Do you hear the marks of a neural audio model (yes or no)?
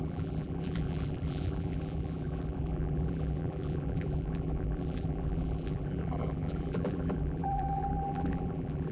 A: yes